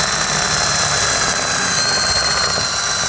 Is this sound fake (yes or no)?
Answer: no